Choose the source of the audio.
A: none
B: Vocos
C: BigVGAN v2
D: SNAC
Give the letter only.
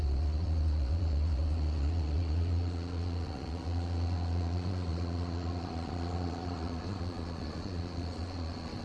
B